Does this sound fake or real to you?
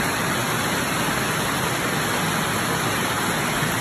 real